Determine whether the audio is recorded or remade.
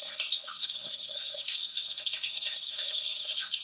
remade